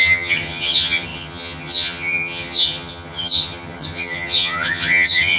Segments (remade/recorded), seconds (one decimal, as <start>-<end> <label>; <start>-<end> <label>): 0.0-5.4 remade